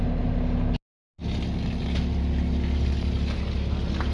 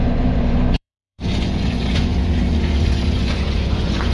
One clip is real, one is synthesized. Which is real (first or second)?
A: first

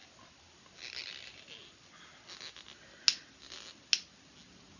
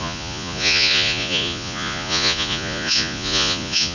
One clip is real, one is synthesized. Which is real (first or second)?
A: first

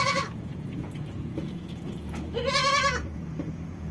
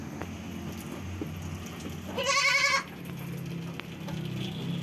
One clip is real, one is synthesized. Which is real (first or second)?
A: second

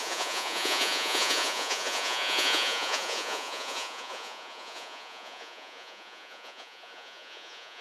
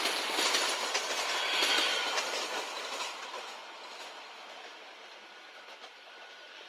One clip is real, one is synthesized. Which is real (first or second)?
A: second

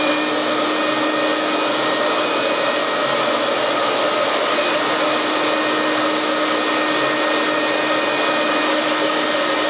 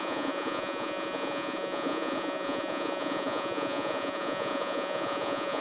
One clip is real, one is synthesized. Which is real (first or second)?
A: first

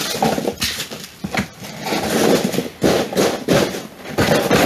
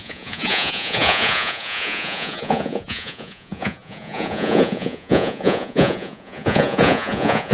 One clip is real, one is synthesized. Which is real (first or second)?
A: first